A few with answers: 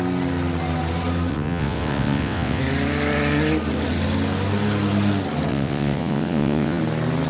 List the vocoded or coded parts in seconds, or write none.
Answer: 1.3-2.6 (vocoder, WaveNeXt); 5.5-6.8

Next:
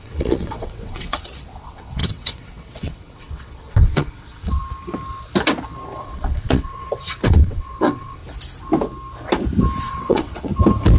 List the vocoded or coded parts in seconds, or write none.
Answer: 0.0-4.6 (vocoder, WaveNeXt); 6.0-8.2; 9.8-10.5